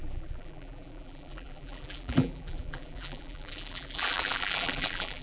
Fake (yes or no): yes